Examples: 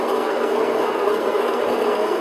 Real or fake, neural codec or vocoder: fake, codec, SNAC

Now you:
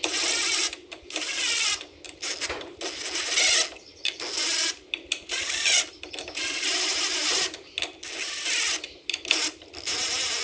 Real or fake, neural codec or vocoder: real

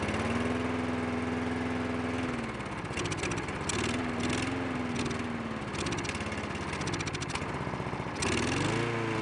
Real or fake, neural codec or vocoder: real